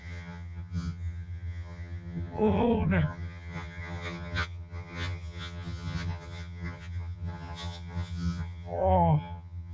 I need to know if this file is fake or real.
fake